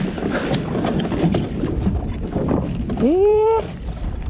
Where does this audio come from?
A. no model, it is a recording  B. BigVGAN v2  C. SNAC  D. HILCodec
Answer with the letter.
B